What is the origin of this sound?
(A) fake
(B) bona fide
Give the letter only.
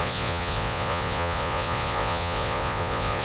A